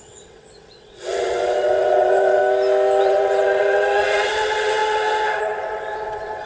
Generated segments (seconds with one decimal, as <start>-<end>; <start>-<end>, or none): 0.0-2.4; 3.0-6.5